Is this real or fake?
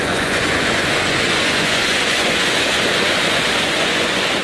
fake